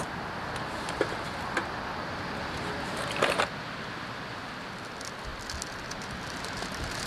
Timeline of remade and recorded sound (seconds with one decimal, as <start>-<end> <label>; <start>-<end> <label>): 0.0-7.1 recorded